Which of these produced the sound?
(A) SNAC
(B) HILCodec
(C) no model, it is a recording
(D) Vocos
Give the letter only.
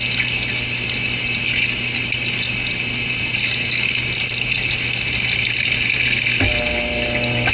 C